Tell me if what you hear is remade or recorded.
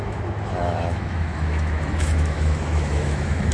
remade